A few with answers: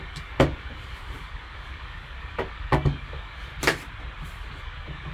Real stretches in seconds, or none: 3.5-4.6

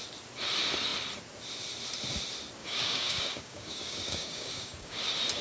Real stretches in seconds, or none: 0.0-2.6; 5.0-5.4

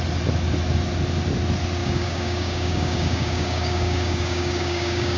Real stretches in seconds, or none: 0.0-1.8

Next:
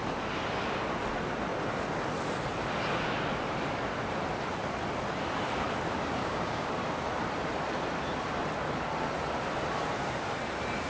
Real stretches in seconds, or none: 0.0-6.2; 6.7-10.9

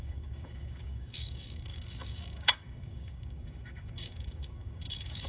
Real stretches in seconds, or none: none

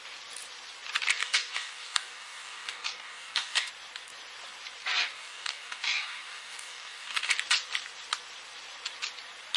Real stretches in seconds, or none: 0.0-1.2; 3.7-5.0; 7.3-9.6